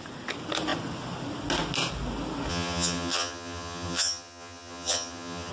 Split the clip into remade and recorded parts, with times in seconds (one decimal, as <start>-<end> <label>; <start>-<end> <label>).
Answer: 0.0-2.5 recorded; 2.5-5.5 remade

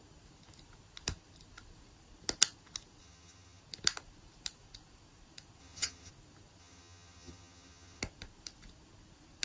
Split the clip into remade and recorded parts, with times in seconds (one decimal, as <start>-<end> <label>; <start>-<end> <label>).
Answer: 0.0-3.0 recorded; 3.0-3.6 remade; 3.6-5.6 recorded; 5.6-6.1 remade; 6.1-6.6 recorded; 6.6-8.0 remade; 8.0-9.4 recorded